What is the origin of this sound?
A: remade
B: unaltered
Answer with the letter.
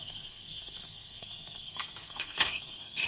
A